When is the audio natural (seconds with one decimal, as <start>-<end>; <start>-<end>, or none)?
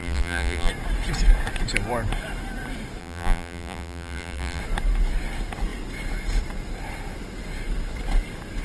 0.7-3.0; 4.6-8.6